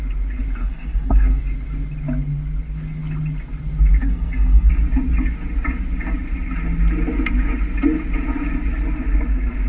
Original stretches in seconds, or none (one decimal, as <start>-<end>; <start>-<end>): 0.0-0.6; 1.4-4.0; 4.7-9.7